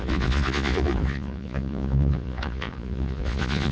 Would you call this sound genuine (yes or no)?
no